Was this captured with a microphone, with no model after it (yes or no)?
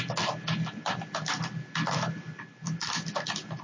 yes